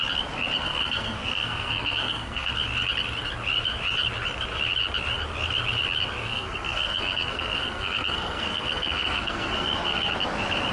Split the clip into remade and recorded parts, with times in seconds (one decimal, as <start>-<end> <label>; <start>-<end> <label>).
0.0-0.6 recorded; 0.6-2.5 remade; 2.5-6.2 recorded; 6.2-10.1 remade; 10.1-10.7 recorded